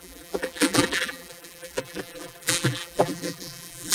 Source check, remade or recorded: remade